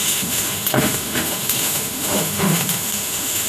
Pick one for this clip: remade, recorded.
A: remade